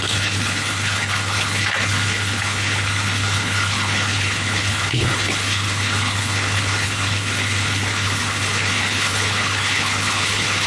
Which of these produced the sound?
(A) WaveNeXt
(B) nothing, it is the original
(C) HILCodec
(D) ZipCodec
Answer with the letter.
C